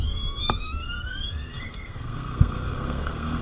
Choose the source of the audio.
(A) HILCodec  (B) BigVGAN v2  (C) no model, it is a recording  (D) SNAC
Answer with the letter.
D